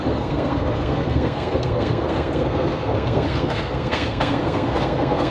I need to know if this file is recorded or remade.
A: remade